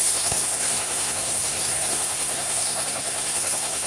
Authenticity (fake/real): fake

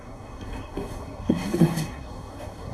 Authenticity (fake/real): fake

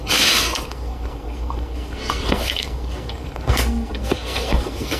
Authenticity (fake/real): fake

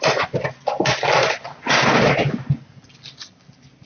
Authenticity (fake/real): real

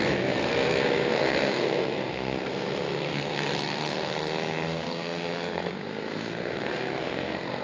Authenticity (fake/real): fake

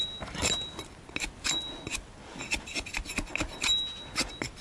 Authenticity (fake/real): real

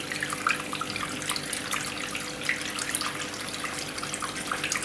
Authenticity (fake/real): real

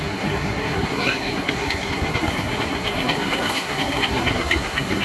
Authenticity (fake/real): fake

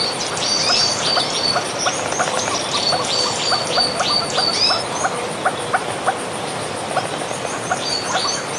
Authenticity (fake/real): real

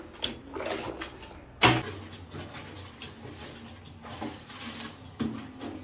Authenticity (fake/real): real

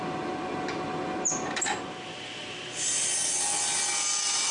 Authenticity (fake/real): real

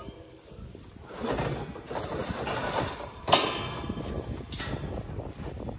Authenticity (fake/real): real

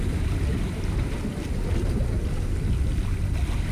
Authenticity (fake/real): real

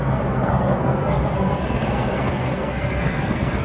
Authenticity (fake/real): fake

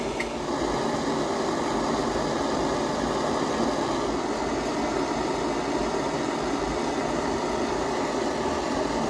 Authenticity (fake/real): real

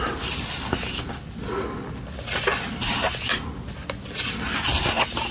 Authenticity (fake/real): real